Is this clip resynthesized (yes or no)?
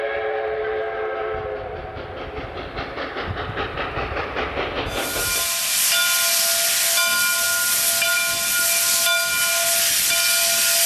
no